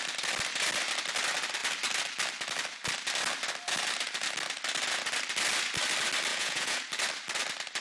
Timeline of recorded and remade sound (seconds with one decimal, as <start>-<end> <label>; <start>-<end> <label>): 0.0-6.3 recorded; 6.3-6.8 remade; 6.8-7.8 recorded